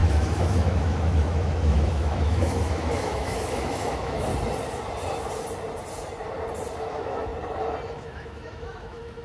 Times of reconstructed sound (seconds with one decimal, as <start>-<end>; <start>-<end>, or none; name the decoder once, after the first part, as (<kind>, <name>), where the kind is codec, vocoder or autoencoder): 0.0-4.3 (autoencoder, DAC-VAE); 6.8-7.3; 7.9-9.2